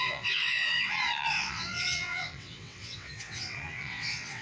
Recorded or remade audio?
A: remade